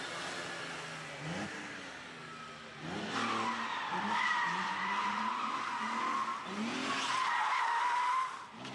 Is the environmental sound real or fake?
real